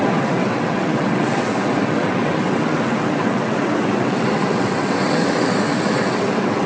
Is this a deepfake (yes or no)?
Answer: yes